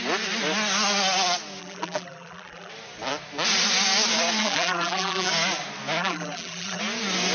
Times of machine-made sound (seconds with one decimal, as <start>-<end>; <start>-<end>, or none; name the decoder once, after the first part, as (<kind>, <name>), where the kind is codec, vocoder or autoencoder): 1.6-2.7 (vocoder, BigVGAN v2); 4.4-5.3; 6.0-6.8